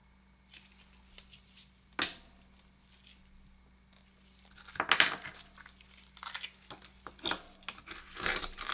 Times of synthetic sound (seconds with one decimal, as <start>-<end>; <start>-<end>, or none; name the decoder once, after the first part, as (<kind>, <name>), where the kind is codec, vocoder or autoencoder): none